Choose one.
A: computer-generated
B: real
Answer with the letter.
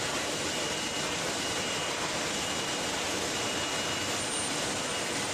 B